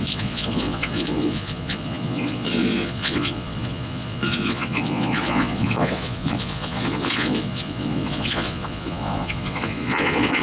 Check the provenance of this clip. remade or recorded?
remade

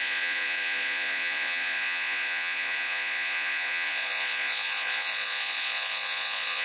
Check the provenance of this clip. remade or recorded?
remade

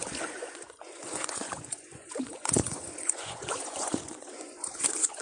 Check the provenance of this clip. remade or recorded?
remade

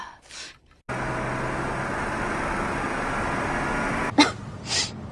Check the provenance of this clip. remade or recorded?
recorded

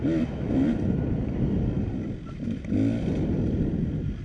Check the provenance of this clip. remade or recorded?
recorded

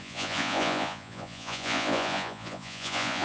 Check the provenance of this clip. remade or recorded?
remade